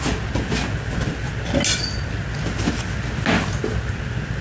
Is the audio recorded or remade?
recorded